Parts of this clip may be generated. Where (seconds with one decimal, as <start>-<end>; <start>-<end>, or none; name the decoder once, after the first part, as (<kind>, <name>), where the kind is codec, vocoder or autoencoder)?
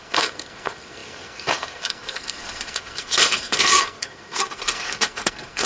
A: 0.0-5.7 (codec, SNAC)